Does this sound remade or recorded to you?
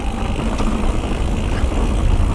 recorded